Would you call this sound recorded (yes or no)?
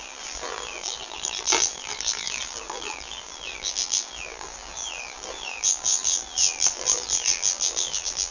no